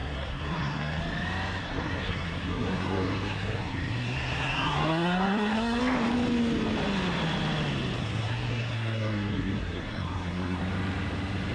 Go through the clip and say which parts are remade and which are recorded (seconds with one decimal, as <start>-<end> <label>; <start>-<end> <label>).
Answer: 0.0-1.0 remade; 1.0-1.6 recorded; 1.6-5.8 remade; 5.8-8.0 recorded; 8.0-10.6 remade; 10.6-11.5 recorded

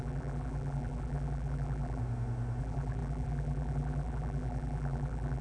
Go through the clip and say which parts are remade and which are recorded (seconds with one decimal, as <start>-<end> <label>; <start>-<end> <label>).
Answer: 0.0-2.0 remade; 2.0-2.6 recorded; 2.6-5.4 remade